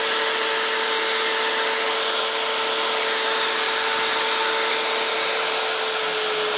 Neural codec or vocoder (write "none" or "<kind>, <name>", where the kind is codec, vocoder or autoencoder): none